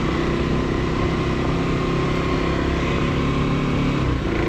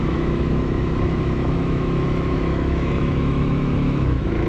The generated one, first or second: second